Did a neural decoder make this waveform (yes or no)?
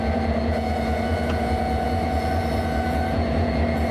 yes